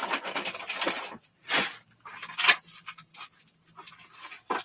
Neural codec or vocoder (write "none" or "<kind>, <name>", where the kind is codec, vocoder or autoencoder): none